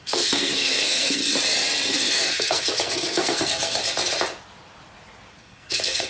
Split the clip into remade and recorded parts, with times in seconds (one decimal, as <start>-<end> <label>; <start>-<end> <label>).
0.0-1.2 remade; 1.2-1.9 recorded; 1.9-3.8 remade; 3.8-5.4 recorded; 5.4-6.1 remade